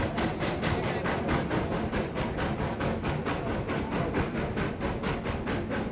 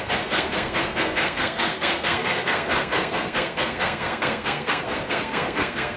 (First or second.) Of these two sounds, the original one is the first